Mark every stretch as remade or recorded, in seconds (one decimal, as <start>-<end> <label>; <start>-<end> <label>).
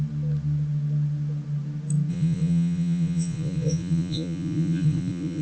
0.0-2.1 recorded; 2.1-5.4 remade